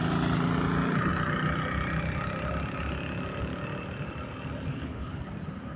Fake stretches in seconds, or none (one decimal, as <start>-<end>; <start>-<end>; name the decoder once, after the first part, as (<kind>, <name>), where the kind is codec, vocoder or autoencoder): 4.7-5.2 (codec, HILCodec)